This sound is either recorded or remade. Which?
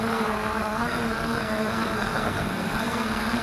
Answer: remade